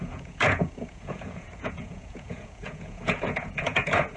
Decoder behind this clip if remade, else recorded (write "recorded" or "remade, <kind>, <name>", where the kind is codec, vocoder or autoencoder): remade, vocoder, Vocos